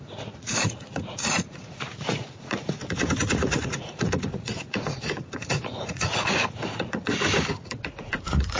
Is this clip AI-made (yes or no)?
yes